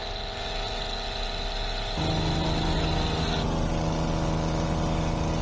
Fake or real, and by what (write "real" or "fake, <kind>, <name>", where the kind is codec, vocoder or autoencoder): real